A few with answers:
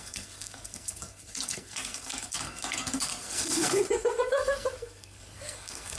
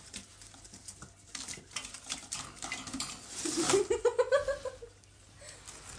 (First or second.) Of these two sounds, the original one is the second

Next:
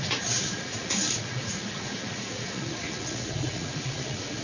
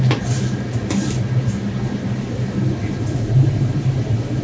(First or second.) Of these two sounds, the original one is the second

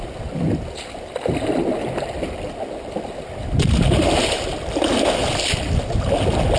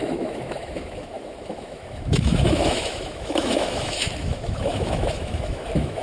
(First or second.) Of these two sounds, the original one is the first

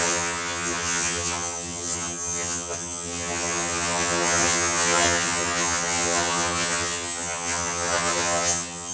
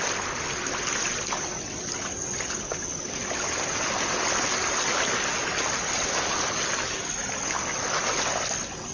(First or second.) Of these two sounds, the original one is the second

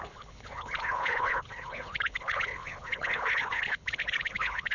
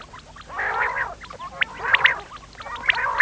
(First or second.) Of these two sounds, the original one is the second